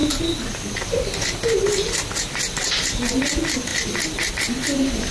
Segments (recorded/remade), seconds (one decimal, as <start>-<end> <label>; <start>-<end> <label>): 0.0-3.1 recorded; 3.1-5.1 remade